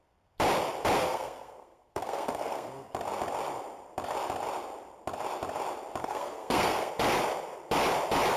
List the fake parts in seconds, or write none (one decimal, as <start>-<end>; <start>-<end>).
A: 1.0-2.9; 6.0-6.9